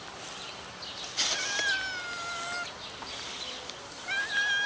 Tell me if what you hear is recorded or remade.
recorded